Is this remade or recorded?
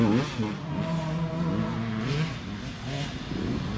recorded